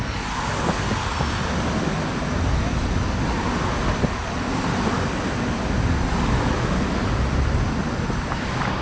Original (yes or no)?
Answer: yes